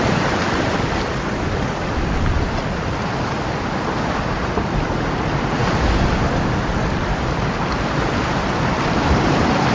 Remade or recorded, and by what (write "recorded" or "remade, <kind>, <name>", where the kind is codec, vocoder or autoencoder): recorded